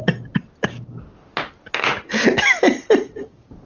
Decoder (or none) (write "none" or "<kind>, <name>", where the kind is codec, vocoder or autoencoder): none